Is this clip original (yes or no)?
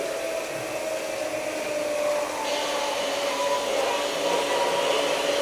yes